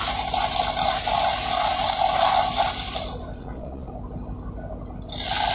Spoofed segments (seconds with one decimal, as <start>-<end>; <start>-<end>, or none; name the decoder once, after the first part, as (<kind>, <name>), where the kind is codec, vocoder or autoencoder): 3.4-3.9 (vocoder, Vocos)